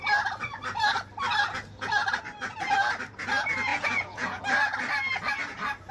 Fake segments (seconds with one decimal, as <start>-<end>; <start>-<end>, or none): 3.7-4.4